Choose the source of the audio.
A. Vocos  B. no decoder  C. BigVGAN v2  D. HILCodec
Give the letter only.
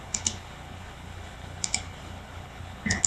D